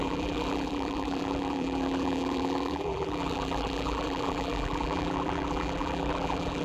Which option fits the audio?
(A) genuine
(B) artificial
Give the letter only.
B